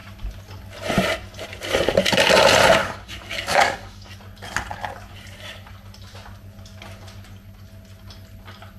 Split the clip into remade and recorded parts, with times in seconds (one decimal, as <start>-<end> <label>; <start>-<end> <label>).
0.0-2.8 recorded; 2.8-4.1 remade; 4.1-8.8 recorded